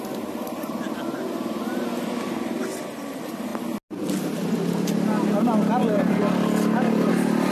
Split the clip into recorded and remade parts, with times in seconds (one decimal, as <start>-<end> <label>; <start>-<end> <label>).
0.0-7.5 recorded